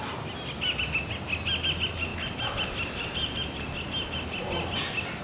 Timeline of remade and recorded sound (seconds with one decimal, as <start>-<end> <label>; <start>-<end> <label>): 0.0-5.2 recorded